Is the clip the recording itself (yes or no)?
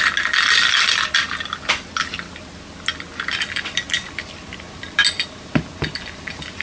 yes